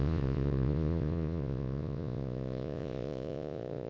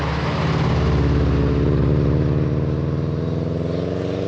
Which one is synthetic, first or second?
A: first